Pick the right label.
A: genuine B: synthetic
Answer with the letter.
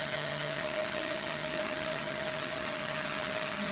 B